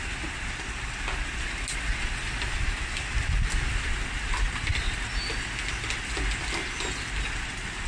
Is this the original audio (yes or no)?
yes